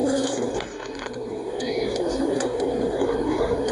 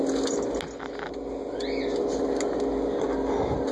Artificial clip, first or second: first